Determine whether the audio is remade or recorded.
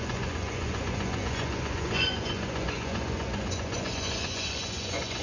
remade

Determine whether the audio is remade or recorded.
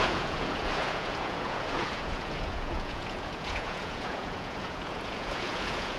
remade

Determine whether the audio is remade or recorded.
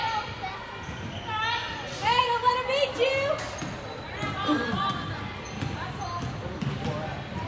recorded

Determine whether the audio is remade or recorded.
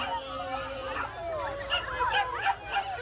recorded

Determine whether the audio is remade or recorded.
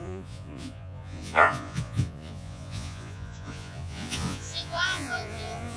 remade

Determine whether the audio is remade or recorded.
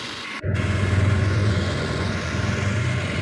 remade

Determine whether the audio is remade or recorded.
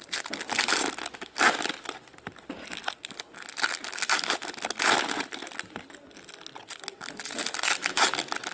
recorded